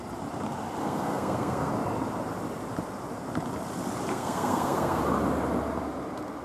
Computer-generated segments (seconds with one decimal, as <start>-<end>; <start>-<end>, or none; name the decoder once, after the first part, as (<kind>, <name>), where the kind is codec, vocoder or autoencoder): 0.8-1.7 (codec, SNAC); 4.1-5.0